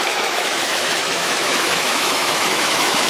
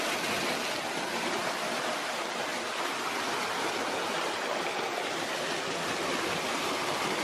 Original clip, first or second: second